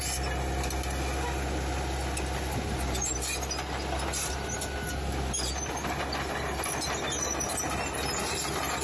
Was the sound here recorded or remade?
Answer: recorded